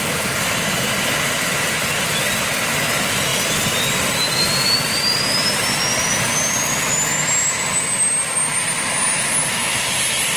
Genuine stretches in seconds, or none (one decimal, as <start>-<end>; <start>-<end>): 0.0-3.3; 5.8-10.4